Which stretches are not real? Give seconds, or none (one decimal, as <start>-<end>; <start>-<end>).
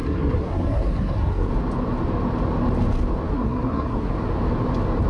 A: 0.0-1.5; 3.3-4.1